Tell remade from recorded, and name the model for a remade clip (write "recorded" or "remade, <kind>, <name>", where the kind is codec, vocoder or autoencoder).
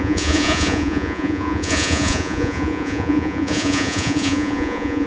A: remade, vocoder, Vocos